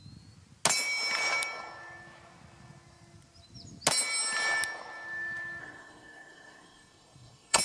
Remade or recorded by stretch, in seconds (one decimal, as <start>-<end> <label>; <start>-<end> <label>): 0.0-5.6 recorded; 5.6-7.6 remade